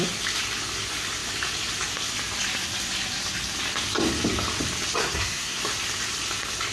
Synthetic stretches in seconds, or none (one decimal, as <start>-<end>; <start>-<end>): 5.0-5.6